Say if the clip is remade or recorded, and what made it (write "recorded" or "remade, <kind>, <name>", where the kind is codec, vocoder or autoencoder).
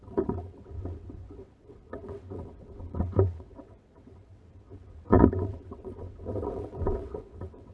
remade, vocoder, WaveNeXt